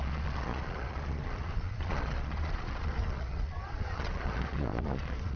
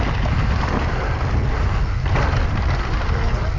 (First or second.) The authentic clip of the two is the second